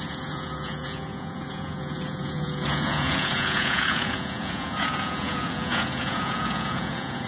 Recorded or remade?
remade